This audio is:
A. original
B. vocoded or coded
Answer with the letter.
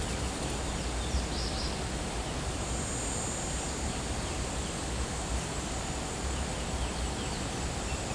A